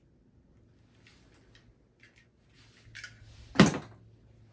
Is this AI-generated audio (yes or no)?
no